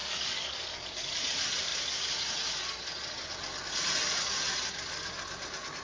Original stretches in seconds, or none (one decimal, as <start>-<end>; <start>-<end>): 1.1-5.8